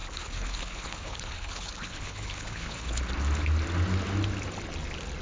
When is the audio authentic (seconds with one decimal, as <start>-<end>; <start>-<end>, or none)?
3.0-5.2